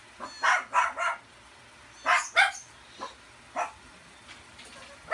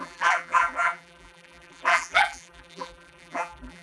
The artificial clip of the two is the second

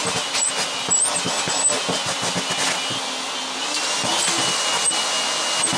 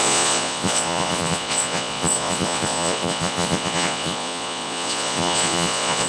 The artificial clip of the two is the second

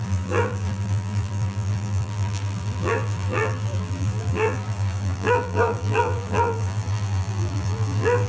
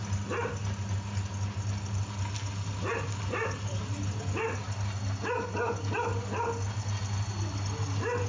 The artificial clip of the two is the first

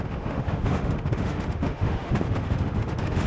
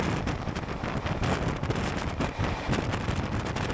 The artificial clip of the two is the first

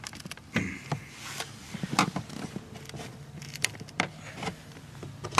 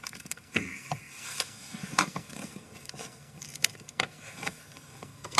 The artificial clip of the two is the second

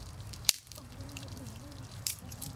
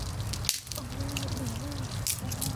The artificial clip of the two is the first